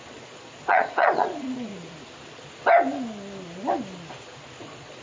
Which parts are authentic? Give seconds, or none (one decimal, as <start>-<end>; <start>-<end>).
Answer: 1.7-4.6